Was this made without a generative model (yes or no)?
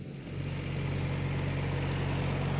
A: yes